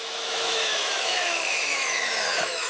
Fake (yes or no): yes